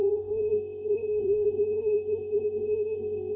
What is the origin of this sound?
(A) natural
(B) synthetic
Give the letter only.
B